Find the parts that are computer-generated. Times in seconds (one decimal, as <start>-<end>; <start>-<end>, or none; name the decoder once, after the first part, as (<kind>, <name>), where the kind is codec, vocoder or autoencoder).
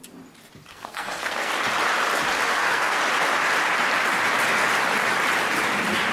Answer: 0.7-1.5 (codec, SNAC); 2.5-3.0